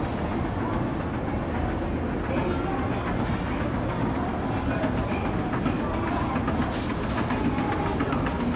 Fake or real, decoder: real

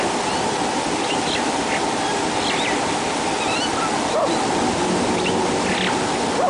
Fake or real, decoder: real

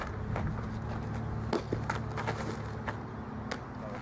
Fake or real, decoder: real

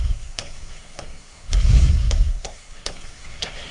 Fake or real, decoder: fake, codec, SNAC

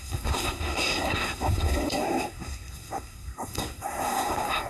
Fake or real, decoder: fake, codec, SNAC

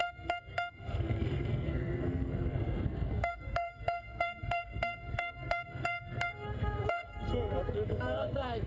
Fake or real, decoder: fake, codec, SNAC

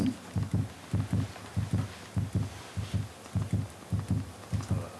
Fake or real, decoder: real